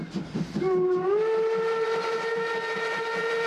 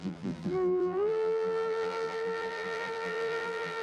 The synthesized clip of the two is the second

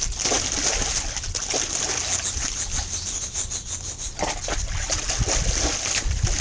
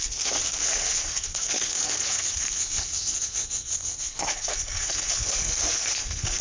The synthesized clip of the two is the second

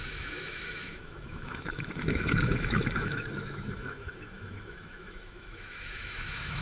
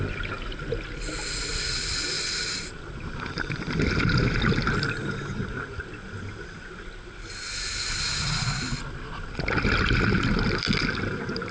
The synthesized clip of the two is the first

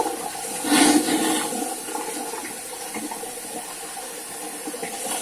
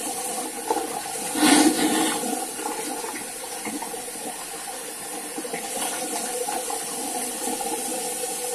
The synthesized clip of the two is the second